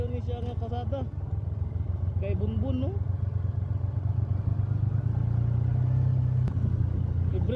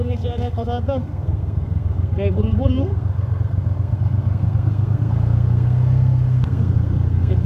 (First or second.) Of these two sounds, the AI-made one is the second